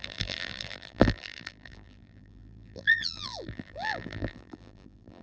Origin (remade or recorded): remade